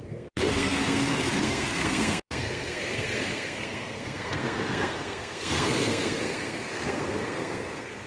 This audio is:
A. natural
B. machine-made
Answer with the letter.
B